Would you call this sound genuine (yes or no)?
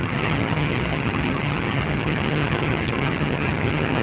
no